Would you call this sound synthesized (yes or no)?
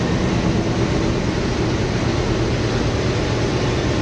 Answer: no